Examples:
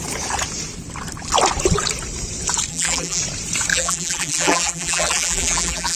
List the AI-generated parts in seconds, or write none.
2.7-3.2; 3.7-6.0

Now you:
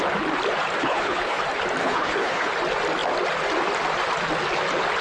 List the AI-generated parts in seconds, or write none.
0.8-1.4; 1.8-2.5

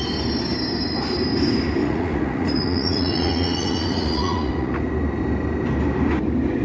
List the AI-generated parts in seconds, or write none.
1.8-4.8

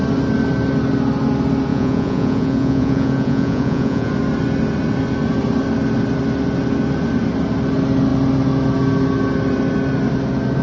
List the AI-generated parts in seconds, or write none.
1.7-4.1

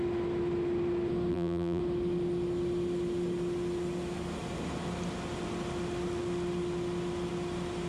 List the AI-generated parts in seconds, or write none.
1.3-1.8

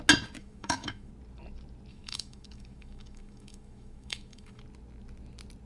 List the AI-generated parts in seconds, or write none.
0.4-1.1; 1.9-4.6

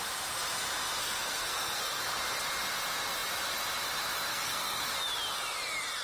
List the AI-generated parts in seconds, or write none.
1.0-2.2; 4.3-4.8

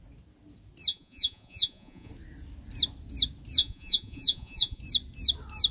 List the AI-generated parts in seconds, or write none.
0.9-2.1; 3.6-4.8